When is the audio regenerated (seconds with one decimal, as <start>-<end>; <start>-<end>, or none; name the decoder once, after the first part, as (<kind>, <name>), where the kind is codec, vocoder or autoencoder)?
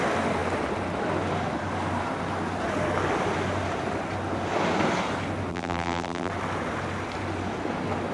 5.5-6.3 (vocoder, BigVGAN v2)